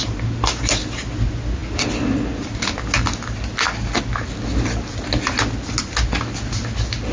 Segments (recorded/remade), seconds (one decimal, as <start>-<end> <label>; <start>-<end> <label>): 0.0-7.1 recorded